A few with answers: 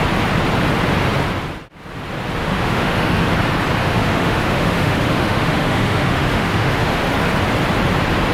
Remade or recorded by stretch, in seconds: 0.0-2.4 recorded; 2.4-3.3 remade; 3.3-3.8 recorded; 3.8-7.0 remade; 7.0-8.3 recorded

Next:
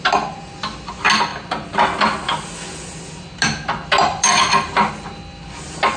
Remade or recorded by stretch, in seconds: 0.0-6.0 recorded